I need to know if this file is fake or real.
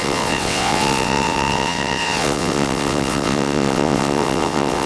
fake